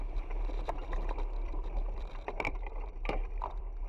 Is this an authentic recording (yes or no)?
no